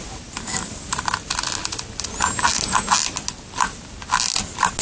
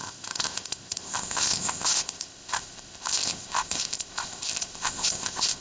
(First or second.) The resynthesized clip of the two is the second